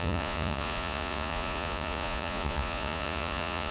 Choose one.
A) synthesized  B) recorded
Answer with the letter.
A